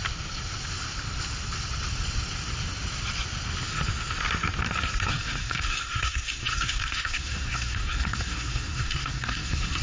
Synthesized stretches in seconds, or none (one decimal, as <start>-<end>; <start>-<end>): 5.1-9.8